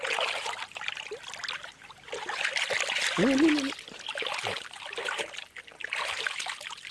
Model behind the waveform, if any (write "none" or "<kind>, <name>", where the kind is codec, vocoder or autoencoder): none